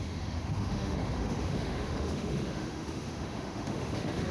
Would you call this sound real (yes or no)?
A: no